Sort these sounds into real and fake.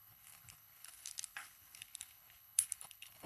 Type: fake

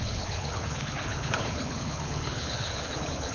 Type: fake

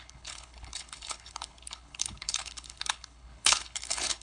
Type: fake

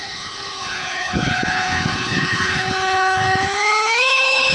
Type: fake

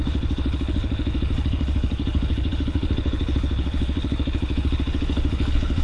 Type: fake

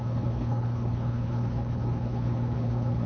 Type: fake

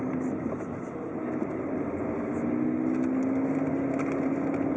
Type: real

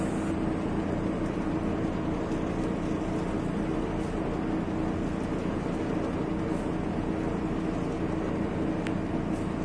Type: real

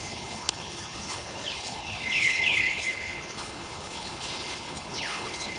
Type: fake